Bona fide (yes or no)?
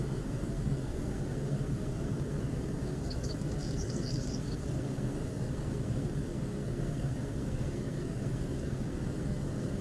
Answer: no